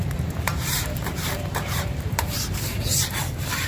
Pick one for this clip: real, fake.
fake